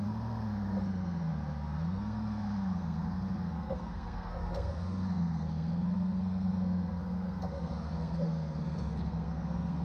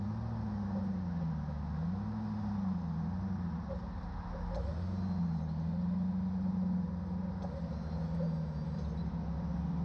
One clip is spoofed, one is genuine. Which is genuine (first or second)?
second